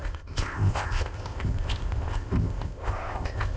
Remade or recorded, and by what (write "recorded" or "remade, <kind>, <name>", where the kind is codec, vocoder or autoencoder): remade, codec, ZipCodec